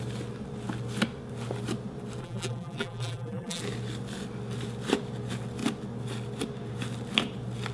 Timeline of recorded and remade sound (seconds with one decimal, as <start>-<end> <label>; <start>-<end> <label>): 0.0-2.2 recorded; 2.2-3.6 remade; 3.6-7.7 recorded